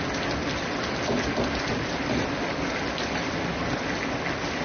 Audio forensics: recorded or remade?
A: recorded